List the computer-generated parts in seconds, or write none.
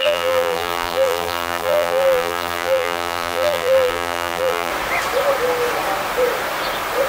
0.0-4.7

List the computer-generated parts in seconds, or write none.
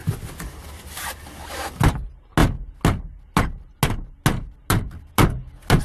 none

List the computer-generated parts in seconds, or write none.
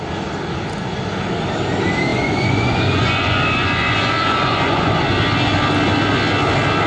2.1-4.9